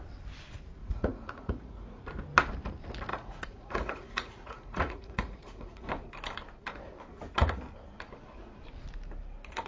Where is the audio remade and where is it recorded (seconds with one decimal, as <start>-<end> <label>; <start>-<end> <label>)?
0.0-0.8 recorded; 0.8-2.0 remade; 2.0-3.1 recorded; 3.1-5.9 remade; 5.9-9.7 recorded